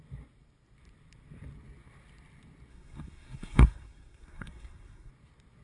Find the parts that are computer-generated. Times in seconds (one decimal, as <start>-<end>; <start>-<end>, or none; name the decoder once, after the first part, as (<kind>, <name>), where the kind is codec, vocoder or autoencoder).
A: 2.7-5.1 (codec, SNAC)